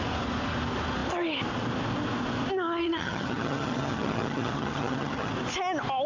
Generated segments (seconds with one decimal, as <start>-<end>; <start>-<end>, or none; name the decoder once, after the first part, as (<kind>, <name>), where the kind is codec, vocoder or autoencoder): 2.8-5.3 (vocoder, HiFi-GAN)